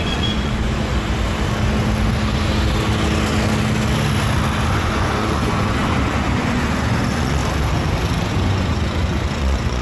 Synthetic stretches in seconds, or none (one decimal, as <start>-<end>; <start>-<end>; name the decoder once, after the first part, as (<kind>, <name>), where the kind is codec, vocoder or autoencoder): 0.0-0.9 (vocoder, Vocos); 4.7-7.4; 8.3-9.8